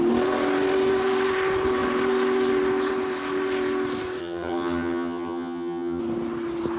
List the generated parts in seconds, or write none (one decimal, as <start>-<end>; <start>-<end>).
4.2-6.0